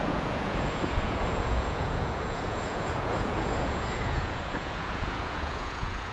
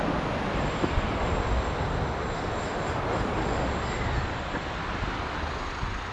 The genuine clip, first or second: second